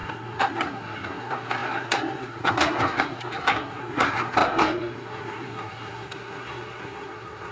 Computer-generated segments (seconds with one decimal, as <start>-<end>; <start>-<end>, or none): 0.0-7.5